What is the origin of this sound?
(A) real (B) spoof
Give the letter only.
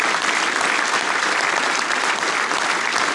A